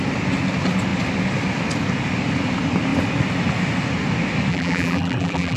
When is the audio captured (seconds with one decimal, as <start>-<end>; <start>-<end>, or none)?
0.0-4.5